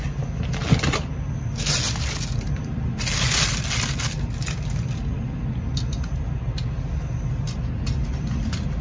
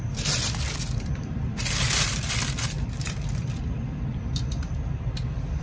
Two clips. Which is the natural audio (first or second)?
first